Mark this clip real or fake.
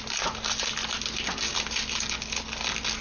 real